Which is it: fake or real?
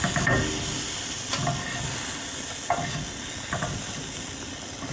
real